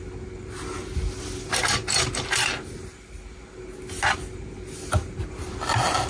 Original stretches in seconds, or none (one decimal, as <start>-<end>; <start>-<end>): 0.0-6.1